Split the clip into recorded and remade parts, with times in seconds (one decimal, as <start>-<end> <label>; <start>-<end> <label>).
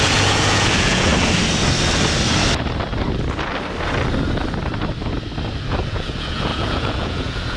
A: 0.0-1.1 remade; 1.1-5.7 recorded; 5.7-7.6 remade